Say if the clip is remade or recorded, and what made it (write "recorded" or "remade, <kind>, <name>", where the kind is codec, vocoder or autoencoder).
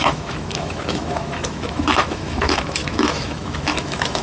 remade, autoencoder, DAC-VAE